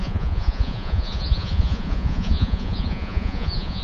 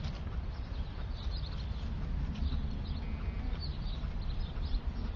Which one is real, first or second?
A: second